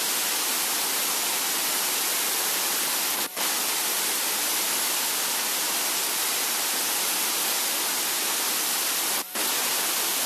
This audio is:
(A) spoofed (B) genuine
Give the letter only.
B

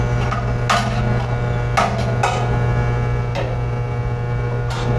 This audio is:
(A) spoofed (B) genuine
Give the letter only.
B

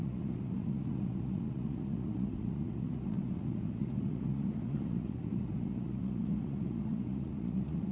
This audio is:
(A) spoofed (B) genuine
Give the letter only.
A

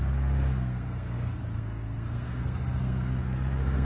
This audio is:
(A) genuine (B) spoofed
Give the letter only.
B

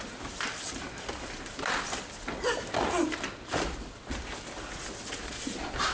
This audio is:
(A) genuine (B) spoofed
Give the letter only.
A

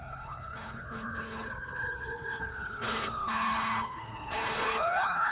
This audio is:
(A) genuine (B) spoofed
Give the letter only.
B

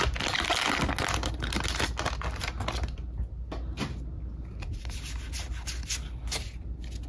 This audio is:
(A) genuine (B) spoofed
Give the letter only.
A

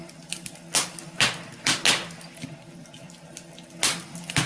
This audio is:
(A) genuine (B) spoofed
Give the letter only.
A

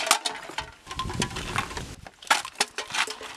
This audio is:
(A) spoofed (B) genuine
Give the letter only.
B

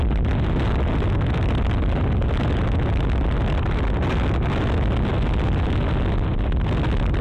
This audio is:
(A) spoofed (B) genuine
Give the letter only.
B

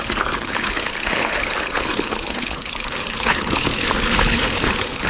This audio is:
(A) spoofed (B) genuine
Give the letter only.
A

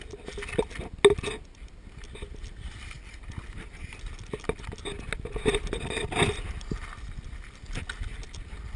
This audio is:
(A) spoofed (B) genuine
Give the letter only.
B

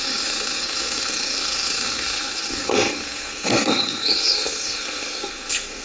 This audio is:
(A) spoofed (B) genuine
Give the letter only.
A